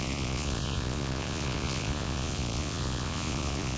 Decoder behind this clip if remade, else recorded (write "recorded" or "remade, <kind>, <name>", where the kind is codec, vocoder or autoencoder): remade, vocoder, Vocos